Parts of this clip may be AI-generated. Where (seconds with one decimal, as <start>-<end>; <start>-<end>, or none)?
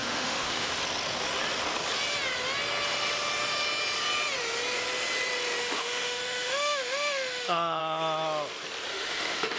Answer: 0.0-0.7; 5.6-7.8; 8.9-9.6